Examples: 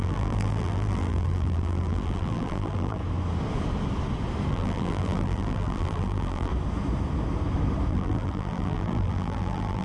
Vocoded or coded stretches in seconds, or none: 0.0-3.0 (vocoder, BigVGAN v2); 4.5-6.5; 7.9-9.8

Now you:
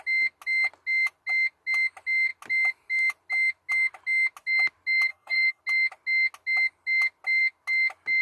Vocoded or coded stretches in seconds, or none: 5.1-5.6 (codec, DAC)

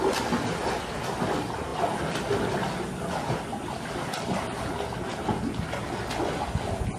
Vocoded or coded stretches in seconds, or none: none

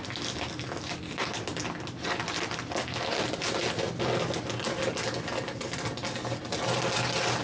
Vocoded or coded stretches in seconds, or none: none

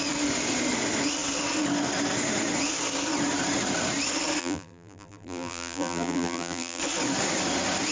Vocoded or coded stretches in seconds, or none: 4.4-6.8 (vocoder, BigVGAN v2)

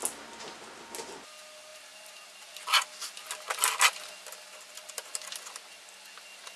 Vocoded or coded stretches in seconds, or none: none

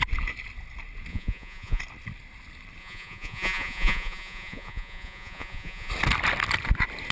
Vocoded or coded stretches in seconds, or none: 1.1-1.8 (vocoder, Vocos); 2.8-5.9

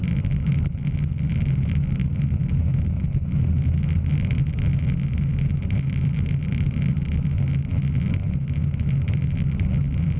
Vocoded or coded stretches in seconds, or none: none